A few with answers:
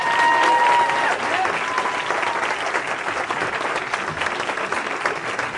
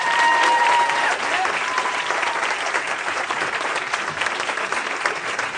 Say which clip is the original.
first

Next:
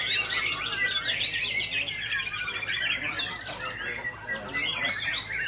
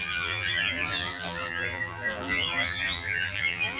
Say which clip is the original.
first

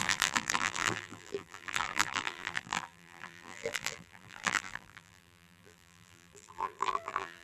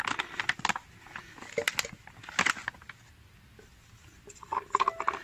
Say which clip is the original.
second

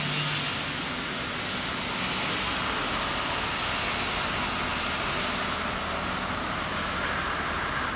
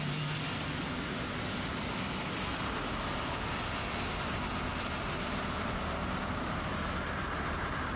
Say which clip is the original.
first